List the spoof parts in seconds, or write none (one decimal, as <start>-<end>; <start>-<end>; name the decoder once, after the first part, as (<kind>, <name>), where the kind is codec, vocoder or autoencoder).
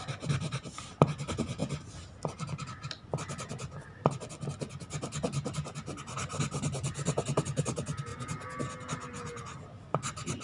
none